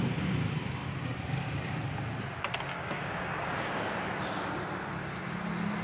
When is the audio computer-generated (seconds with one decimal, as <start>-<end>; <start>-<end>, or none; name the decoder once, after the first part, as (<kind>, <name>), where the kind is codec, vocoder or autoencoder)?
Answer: 2.7-3.9 (codec, DAC)